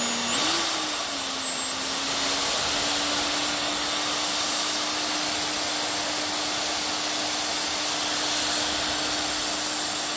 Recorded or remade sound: recorded